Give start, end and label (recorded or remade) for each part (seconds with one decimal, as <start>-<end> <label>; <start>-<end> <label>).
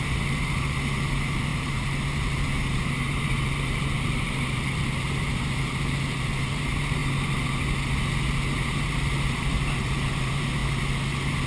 0.0-7.0 remade; 7.0-8.8 recorded; 8.8-10.6 remade; 10.6-11.5 recorded